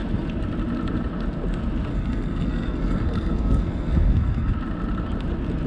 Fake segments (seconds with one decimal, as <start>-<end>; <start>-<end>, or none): 1.9-4.5